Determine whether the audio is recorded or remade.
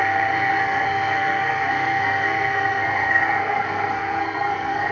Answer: remade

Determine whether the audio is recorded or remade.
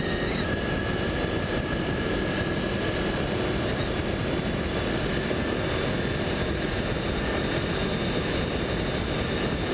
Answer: recorded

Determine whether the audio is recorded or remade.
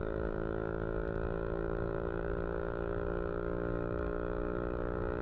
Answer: remade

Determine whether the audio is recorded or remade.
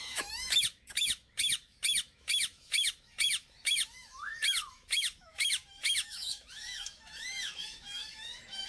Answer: remade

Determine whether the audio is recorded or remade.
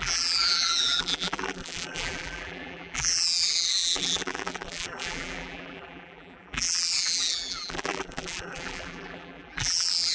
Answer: remade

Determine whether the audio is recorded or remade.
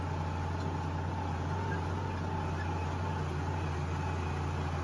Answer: recorded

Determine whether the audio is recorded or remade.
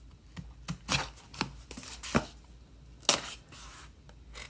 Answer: recorded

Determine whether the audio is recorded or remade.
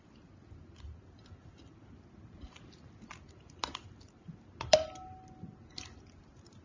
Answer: recorded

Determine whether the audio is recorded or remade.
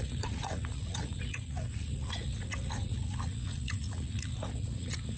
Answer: remade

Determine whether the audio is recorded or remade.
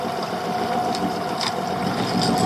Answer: recorded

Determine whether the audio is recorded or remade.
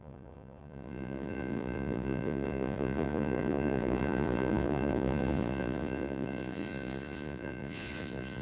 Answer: remade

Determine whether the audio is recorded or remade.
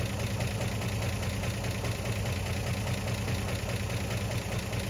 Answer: recorded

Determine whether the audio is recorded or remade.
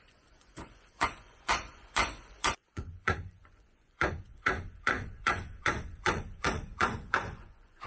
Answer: remade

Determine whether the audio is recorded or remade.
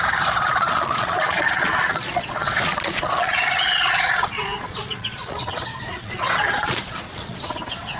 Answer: remade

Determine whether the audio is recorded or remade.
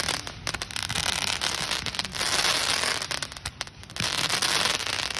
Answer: recorded